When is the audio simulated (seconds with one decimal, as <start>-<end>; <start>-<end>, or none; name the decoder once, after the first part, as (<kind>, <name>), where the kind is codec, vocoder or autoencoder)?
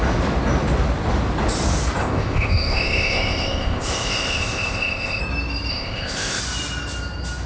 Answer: 2.0-5.2 (codec, ZipCodec); 5.7-6.4